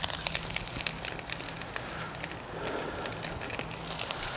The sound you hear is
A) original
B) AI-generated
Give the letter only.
A